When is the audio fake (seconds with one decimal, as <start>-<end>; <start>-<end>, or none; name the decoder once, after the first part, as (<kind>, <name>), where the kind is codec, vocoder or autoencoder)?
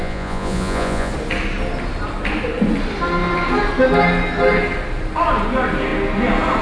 0.0-1.1 (vocoder, Vocos)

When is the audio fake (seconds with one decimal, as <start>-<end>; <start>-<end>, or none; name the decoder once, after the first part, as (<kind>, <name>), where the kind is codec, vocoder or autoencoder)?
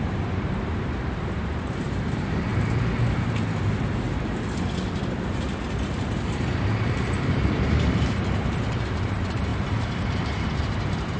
0.0-2.5 (vocoder, BigVGAN v2); 6.1-11.2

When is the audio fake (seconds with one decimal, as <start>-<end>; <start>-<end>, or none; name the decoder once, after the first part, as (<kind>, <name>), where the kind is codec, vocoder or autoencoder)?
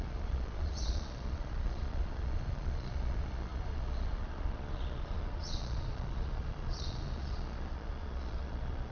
0.0-8.9 (vocoder, Vocos)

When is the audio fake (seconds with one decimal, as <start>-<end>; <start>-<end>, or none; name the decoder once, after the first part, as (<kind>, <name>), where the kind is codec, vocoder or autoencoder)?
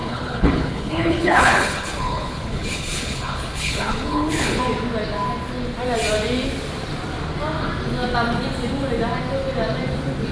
0.0-4.6 (codec, HILCodec)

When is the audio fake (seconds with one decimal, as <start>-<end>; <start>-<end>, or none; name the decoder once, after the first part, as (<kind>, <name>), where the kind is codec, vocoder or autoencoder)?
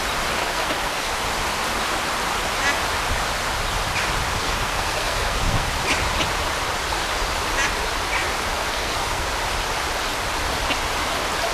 0.4-1.1 (codec, SNAC); 4.4-5.7; 8.5-9.3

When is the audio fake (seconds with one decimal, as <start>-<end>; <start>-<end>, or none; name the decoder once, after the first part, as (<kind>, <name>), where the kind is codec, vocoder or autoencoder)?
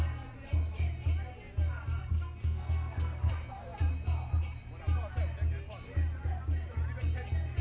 2.0-3.3 (codec, SNAC)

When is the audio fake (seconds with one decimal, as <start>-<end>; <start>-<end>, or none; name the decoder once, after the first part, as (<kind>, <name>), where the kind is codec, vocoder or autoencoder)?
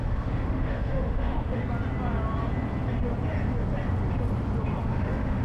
0.0-1.6 (autoencoder, DAC-VAE); 4.8-5.4